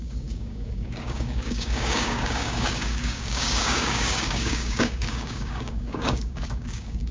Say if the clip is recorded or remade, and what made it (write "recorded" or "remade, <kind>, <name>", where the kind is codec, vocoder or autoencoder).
remade, codec, DAC